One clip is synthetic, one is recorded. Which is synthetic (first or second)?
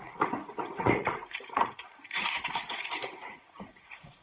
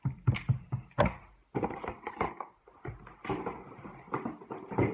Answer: first